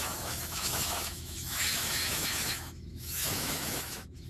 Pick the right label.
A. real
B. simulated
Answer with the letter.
B